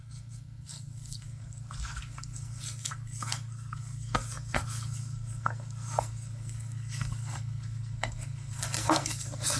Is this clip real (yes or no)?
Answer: no